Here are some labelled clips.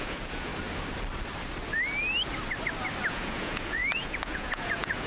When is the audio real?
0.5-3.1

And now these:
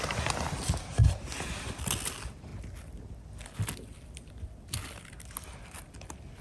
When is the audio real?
0.0-6.4

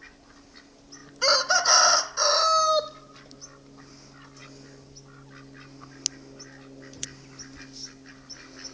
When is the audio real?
0.0-8.7

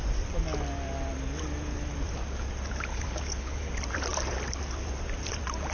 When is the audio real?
0.0-2.9; 3.7-5.7